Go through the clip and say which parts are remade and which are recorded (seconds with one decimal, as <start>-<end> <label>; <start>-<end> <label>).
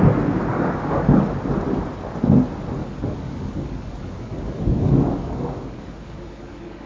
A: 0.0-0.5 recorded; 0.5-1.2 remade; 1.2-2.8 recorded; 2.8-6.9 remade